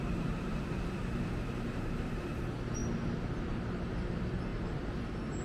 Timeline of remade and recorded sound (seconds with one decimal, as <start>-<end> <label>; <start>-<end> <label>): 0.0-2.8 remade; 2.8-3.4 recorded; 3.4-5.4 remade